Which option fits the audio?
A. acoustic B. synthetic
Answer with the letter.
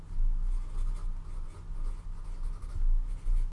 A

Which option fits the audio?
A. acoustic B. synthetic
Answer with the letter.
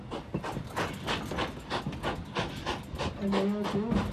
A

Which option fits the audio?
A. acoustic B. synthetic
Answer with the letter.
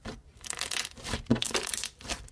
B